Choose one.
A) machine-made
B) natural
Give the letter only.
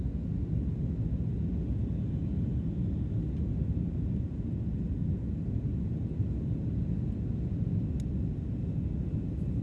B